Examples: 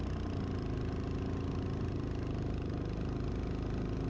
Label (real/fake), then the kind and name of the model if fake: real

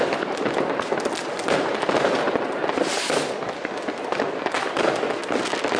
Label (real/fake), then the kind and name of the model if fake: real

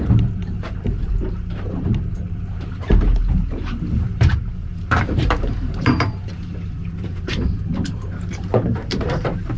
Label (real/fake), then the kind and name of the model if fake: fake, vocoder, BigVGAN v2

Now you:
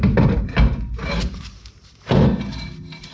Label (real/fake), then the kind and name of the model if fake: real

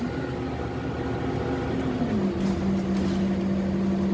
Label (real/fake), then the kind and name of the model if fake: real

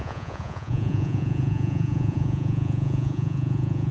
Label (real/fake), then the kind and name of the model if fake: fake, vocoder, Vocos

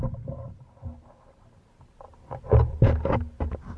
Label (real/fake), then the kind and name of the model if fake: real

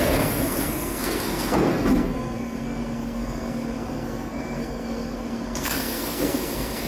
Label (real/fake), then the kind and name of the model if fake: fake, codec, SNAC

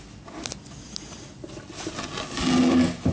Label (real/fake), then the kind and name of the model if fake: real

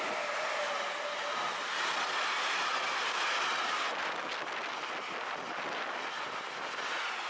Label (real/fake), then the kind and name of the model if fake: real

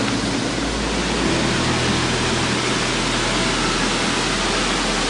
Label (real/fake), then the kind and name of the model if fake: real